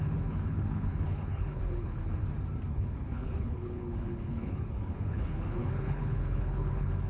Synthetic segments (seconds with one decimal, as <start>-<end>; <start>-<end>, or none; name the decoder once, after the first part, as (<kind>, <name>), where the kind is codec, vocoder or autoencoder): 0.0-2.2 (codec, HILCodec); 2.7-7.1